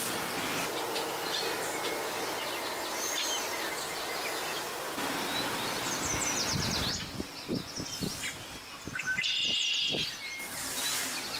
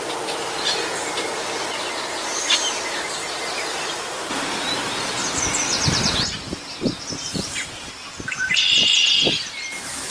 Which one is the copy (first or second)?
second